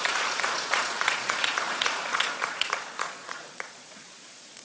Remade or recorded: remade